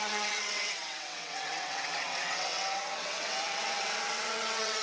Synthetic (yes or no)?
yes